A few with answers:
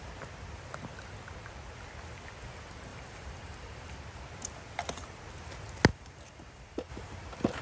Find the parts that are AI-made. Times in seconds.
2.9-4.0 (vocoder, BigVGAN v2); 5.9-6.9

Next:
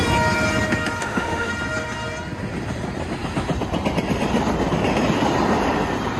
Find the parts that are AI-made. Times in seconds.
1.0-1.5 (autoencoder, DAC-VAE)

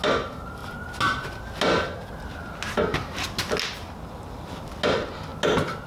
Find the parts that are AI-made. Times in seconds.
none

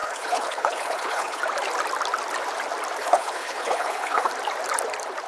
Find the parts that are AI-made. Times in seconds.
0.0-1.4 (codec, HILCodec); 3.0-4.3

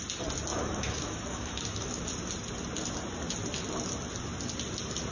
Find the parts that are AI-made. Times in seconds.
0.5-2.1 (autoencoder, DAC-VAE)

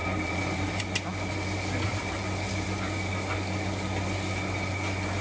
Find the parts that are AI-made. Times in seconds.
0.0-0.8 (vocoder, BigVGAN v2); 1.9-2.5

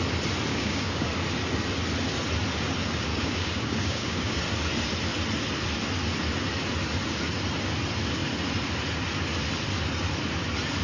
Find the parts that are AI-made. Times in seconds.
0.5-1.1 (codec, DAC); 3.1-4.4